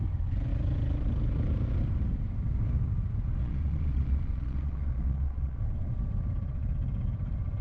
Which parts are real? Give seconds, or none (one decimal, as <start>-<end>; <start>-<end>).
0.0-3.4; 5.6-7.6